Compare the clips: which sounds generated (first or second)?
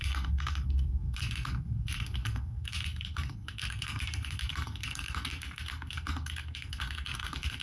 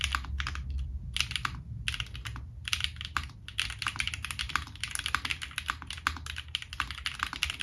first